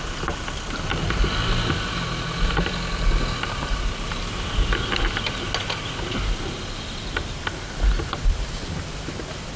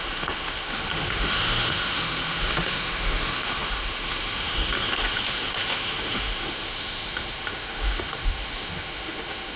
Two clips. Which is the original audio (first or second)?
first